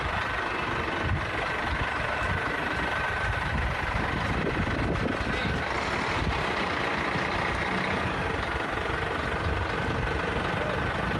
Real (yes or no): yes